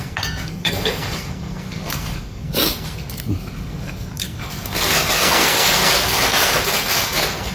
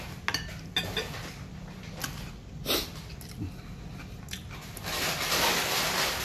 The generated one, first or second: first